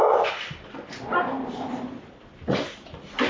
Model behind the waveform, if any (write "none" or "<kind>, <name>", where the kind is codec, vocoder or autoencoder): none